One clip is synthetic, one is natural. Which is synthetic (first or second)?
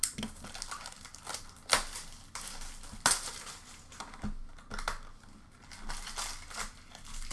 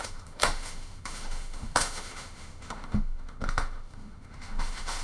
second